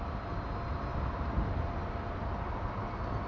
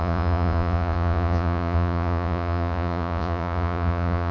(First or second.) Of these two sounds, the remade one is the second